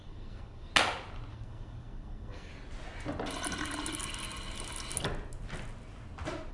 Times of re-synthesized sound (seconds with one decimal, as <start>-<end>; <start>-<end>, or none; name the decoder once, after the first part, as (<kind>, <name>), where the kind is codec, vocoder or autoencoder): 0.0-0.7 (codec, SNAC); 1.3-2.5